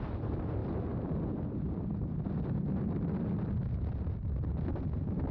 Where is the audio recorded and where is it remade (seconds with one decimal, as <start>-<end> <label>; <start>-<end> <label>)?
0.0-0.6 recorded; 0.6-3.8 remade; 3.8-5.3 recorded